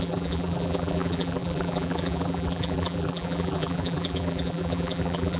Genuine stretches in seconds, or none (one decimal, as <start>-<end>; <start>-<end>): none